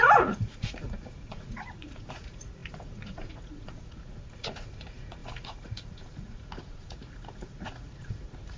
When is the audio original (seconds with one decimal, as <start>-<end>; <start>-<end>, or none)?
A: none